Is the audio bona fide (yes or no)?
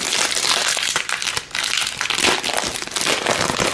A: yes